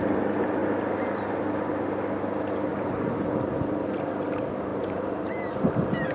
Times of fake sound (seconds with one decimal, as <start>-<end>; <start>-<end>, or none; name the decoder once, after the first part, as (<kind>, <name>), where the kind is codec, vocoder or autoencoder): 2.7-3.9 (vocoder, BigVGAN v2); 4.7-5.5